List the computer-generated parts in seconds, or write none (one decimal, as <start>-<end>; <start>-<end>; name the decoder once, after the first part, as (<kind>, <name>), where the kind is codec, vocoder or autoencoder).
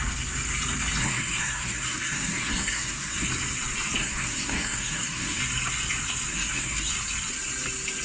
1.0-3.3 (codec, SNAC); 4.0-5.4; 6.3-6.9